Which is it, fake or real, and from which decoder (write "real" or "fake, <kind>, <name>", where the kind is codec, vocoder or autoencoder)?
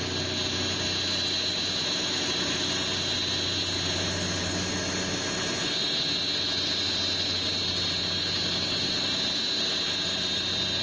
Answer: real